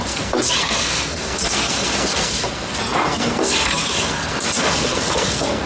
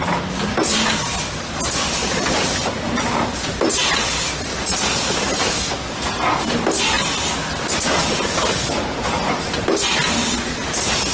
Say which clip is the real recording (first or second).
second